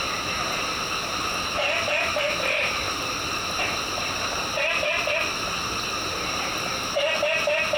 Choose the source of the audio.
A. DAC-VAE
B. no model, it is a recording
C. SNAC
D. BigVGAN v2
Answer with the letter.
B